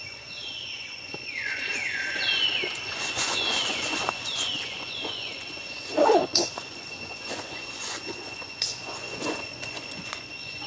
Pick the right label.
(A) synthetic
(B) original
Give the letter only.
A